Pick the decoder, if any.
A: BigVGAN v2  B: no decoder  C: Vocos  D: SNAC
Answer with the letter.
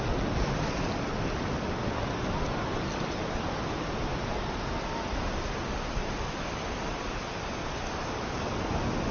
B